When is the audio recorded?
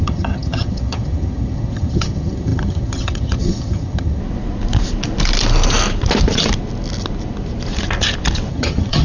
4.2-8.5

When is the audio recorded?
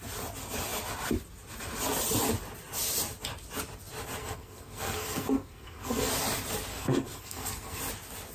0.0-4.2; 6.1-6.7; 7.8-8.3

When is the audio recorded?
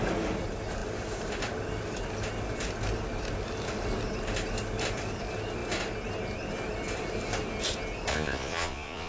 0.0-8.1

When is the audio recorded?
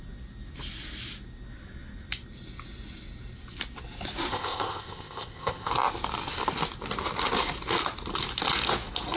0.0-4.3; 5.7-9.2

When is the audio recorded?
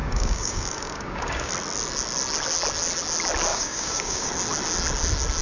1.5-3.5; 4.3-5.4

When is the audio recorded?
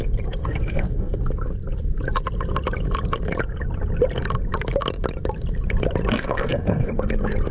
0.0-0.4; 1.2-6.1; 6.9-7.5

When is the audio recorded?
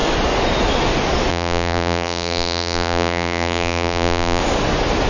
0.0-1.3; 4.4-5.1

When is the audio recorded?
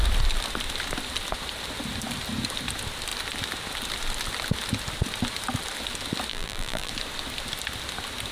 0.0-6.3; 6.9-8.3